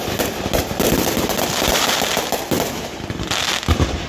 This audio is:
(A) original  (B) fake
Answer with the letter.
B